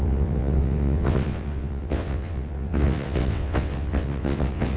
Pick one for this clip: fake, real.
fake